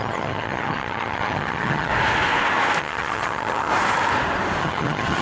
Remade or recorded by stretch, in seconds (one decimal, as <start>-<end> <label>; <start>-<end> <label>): 0.0-1.9 remade; 1.9-2.8 recorded; 2.8-3.7 remade; 3.7-4.6 recorded; 4.6-5.2 remade